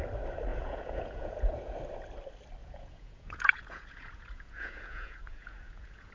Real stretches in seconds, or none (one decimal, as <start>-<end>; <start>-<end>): 0.0-0.5; 1.8-2.6

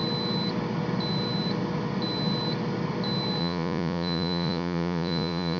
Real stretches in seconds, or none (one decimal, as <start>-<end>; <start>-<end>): 0.0-3.4

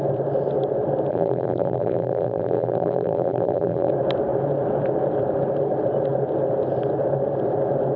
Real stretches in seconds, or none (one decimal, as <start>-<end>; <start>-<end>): 0.0-1.1; 3.9-8.0

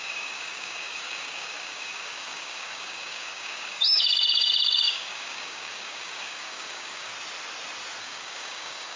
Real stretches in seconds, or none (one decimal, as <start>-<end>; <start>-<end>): 7.1-8.0

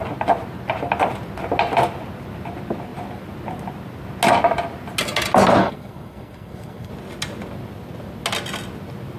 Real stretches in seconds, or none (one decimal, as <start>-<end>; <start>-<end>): 0.0-5.6; 6.9-9.2